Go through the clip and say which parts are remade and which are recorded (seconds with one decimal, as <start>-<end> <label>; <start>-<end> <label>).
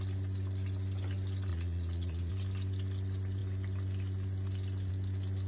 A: 0.0-1.5 recorded; 1.5-2.3 remade; 2.3-5.5 recorded